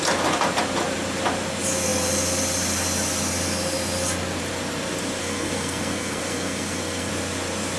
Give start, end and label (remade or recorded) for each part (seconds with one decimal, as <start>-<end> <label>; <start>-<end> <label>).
0.0-5.2 recorded; 5.2-7.1 remade; 7.1-7.8 recorded